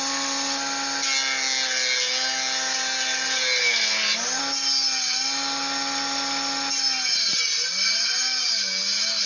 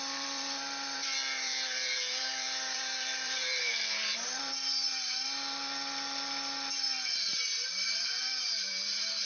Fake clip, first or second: second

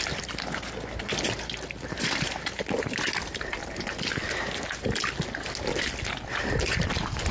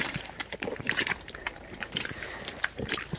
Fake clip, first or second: second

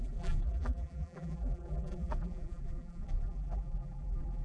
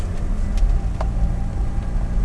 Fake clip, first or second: first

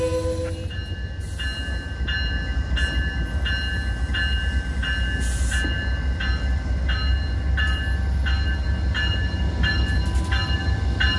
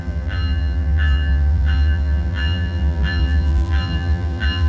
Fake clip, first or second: second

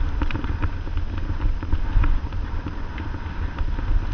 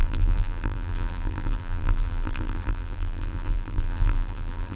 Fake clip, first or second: second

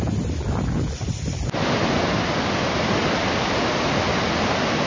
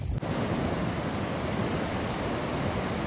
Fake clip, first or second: second